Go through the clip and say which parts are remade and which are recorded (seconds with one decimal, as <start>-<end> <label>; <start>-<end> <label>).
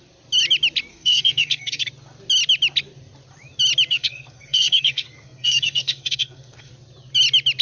0.0-0.9 recorded; 0.9-1.9 remade; 1.9-3.9 recorded; 3.9-6.7 remade; 6.7-7.6 recorded